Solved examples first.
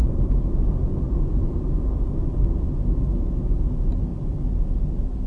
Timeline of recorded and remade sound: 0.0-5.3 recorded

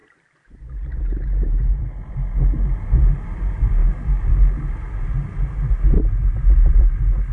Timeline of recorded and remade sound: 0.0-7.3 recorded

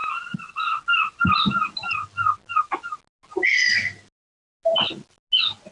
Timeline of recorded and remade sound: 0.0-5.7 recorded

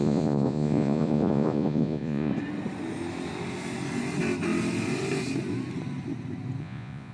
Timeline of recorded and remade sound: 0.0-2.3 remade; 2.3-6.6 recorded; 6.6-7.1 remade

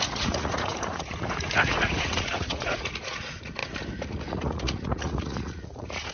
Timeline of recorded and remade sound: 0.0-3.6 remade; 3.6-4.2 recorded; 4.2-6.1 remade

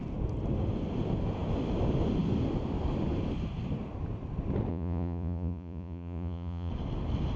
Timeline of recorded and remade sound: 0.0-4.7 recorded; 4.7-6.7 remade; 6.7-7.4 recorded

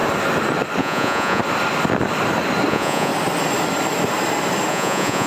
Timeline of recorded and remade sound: 0.0-0.8 recorded; 0.8-1.4 remade; 1.4-2.7 recorded; 2.7-3.1 remade; 3.1-4.7 recorded; 4.7-5.3 remade